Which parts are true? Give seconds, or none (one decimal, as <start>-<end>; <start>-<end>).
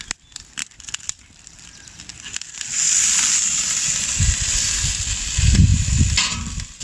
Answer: 0.0-0.6; 3.0-5.7